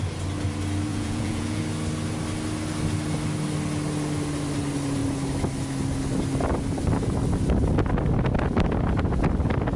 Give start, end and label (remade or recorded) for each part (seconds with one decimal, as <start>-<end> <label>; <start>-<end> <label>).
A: 0.0-0.9 recorded; 0.9-1.6 remade; 1.6-9.8 recorded